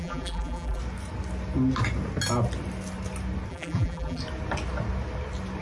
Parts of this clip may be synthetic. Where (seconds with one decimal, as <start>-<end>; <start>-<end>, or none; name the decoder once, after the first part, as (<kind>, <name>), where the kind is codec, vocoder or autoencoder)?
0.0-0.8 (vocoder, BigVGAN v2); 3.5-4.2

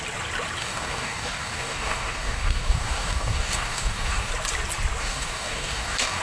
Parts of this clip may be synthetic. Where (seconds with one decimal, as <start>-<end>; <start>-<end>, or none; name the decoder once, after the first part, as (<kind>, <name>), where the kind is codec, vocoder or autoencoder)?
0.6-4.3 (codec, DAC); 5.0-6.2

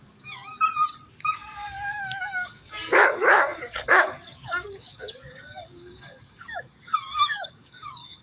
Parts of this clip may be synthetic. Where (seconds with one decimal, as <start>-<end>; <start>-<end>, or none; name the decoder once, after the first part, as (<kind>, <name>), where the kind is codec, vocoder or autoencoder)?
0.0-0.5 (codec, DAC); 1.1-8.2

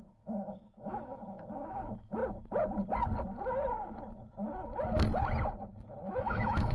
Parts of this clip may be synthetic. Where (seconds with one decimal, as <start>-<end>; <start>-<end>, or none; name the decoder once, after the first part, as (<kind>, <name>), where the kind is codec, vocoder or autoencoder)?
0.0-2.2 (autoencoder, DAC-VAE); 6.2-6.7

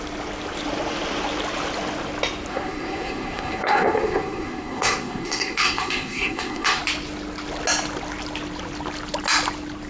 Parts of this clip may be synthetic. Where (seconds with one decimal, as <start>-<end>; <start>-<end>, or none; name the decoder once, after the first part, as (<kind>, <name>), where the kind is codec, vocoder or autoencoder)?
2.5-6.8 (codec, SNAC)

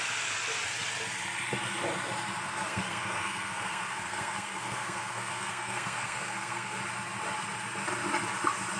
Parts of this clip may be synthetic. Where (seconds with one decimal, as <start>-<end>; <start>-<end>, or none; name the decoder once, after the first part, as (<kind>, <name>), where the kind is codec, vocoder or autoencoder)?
2.4-6.8 (codec, SNAC)